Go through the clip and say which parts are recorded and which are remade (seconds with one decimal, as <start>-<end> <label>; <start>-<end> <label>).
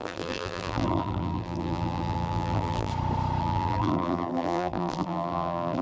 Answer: 0.0-2.9 remade; 2.9-3.4 recorded; 3.4-5.8 remade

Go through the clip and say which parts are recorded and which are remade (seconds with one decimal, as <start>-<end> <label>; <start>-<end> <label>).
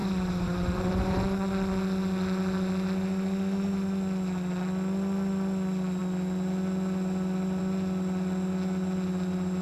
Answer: 0.0-1.2 remade; 1.2-9.6 recorded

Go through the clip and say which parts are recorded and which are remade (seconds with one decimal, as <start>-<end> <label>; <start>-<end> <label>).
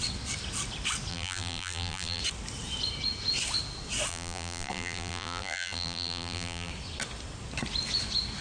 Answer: 0.0-1.1 recorded; 1.1-2.2 remade; 2.2-4.1 recorded; 4.1-6.7 remade; 6.7-8.4 recorded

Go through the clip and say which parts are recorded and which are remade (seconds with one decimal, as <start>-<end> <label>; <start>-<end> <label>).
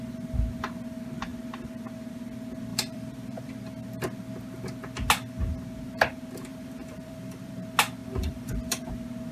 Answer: 0.0-2.7 recorded; 2.7-3.5 remade; 3.5-6.5 recorded; 6.5-7.5 remade; 7.5-8.0 recorded; 8.0-8.9 remade; 8.9-9.3 recorded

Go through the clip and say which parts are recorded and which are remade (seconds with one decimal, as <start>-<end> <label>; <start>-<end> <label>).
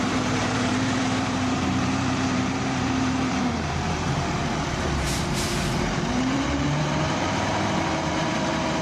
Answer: 0.0-8.8 remade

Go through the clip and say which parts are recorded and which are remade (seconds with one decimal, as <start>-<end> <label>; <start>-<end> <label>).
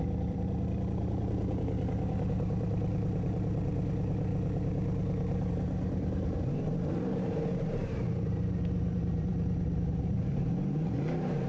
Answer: 0.0-4.3 remade; 4.3-5.5 recorded; 5.5-11.5 remade